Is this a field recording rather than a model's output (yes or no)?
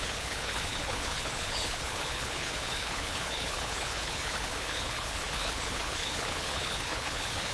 no